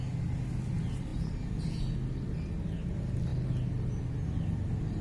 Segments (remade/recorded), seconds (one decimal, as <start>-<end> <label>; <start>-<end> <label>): 0.0-5.0 recorded